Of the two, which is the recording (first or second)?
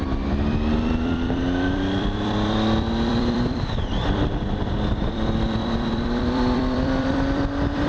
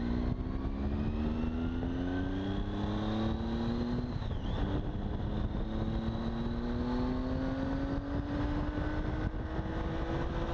second